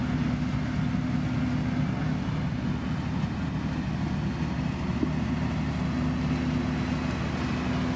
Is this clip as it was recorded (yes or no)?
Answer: yes